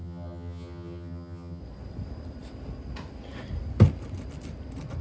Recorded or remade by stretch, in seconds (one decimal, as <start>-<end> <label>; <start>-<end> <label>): 0.0-1.6 remade; 1.6-5.0 recorded